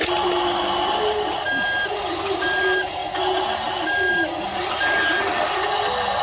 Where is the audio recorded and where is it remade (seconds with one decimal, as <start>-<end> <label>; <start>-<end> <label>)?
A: 0.0-6.2 recorded